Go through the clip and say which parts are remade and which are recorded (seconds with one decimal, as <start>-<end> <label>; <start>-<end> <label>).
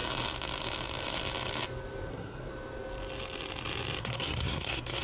0.0-2.1 recorded; 2.1-2.5 remade; 2.5-4.0 recorded; 4.0-5.0 remade